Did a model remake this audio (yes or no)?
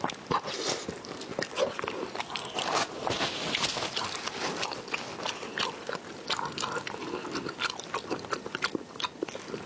no